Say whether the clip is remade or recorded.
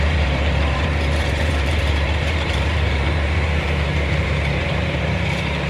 remade